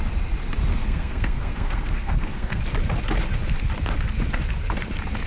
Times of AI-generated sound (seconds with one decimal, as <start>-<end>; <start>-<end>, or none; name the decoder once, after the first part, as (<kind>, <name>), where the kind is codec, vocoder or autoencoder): 0.7-2.6 (codec, SNAC)